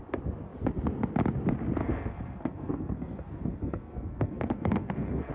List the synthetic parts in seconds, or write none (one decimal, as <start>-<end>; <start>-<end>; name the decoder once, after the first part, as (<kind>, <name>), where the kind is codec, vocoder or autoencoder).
1.8-5.3 (codec, SNAC)